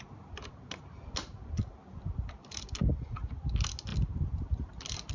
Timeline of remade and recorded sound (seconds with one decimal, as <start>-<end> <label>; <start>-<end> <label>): 0.0-2.9 recorded; 2.9-3.4 remade; 3.4-5.1 recorded